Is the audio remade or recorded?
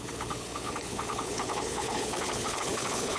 remade